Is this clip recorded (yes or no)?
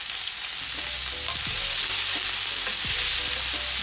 yes